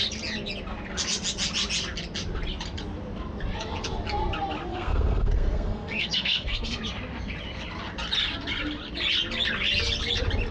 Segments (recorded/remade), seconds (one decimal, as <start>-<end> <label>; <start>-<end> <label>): 0.0-4.7 recorded; 4.7-6.8 remade; 6.8-10.5 recorded